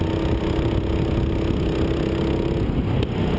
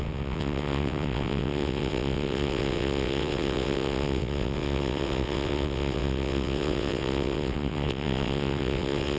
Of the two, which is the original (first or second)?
first